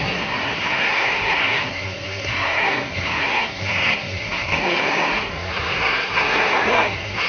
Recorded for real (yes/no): no